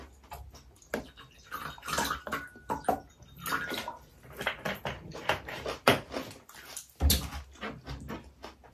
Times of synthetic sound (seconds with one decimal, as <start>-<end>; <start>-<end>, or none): 5.1-6.1